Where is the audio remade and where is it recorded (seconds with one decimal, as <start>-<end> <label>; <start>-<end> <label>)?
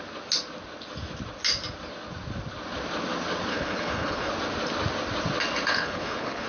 0.0-3.5 recorded; 3.5-4.3 remade; 4.3-5.7 recorded; 5.7-6.5 remade